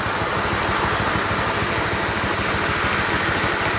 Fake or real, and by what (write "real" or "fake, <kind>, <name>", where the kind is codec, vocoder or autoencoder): real